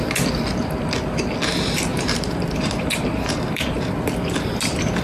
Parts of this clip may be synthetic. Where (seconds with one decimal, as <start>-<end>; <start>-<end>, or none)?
1.9-3.9